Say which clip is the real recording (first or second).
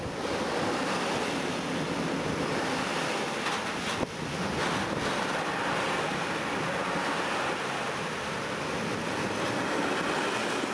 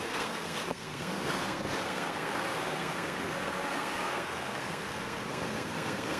first